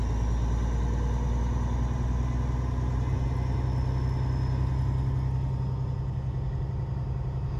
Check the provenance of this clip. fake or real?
real